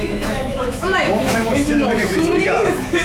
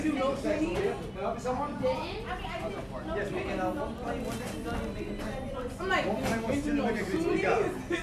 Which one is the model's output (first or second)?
first